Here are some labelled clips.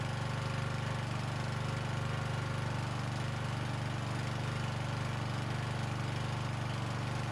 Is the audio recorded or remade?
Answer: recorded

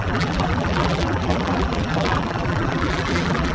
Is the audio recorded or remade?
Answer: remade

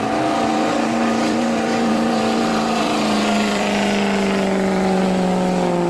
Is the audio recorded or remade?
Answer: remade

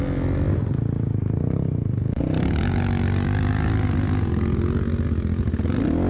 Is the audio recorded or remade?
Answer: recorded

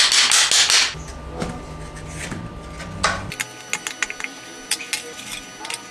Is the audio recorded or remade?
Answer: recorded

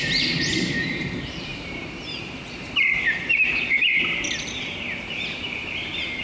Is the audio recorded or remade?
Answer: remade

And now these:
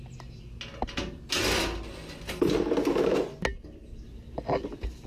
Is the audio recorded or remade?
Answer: recorded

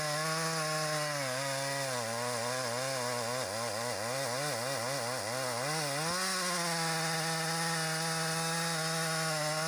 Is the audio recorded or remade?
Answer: recorded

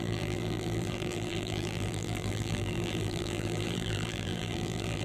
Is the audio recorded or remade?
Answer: remade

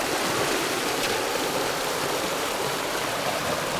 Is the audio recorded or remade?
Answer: recorded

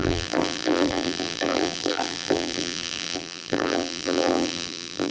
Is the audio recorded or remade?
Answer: remade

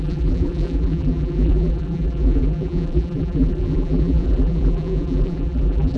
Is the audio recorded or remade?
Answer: remade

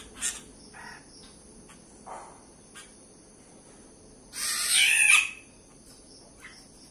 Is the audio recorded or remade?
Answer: recorded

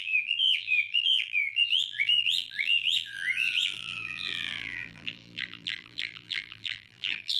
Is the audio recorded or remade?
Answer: remade